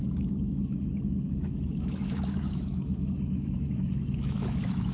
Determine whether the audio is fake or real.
fake